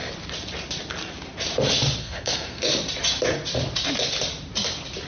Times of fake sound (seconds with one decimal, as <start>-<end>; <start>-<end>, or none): 2.0-2.7